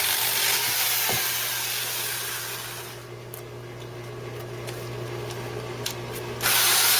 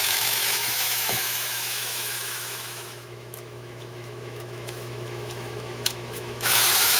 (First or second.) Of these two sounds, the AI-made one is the second